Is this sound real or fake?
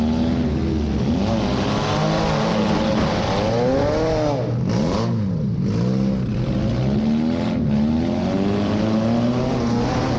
real